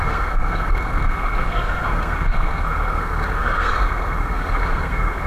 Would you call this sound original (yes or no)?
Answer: no